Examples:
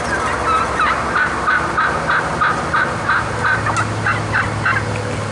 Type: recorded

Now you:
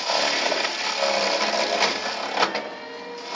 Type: recorded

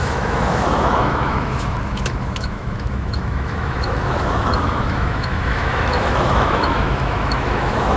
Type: remade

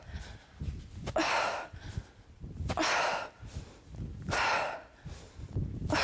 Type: recorded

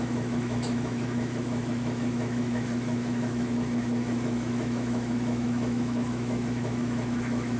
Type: remade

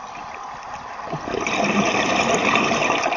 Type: recorded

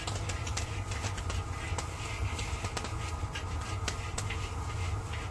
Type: recorded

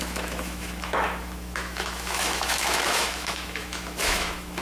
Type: remade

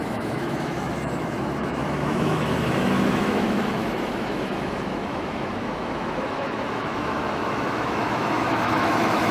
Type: remade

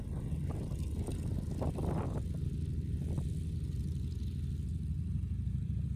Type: recorded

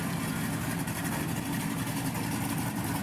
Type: recorded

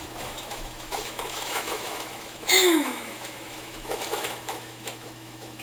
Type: remade